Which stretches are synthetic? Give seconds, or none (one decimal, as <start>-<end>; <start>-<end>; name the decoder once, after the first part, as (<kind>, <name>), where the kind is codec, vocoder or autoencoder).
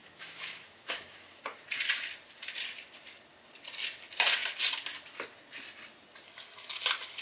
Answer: 0.0-1.4 (autoencoder, DAC-VAE)